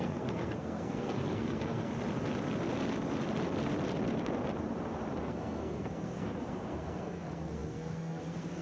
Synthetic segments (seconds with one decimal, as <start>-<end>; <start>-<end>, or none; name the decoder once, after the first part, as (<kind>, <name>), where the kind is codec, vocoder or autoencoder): 0.0-1.9 (codec, SNAC); 5.2-8.6